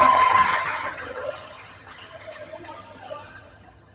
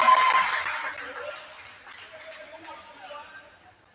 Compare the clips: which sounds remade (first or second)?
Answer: first